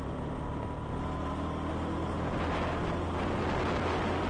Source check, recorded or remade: recorded